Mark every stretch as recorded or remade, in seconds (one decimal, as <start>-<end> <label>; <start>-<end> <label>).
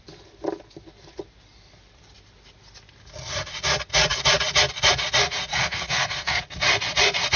0.0-5.5 recorded; 5.5-6.4 remade; 6.4-7.4 recorded